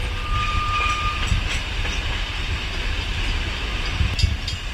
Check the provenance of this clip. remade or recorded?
recorded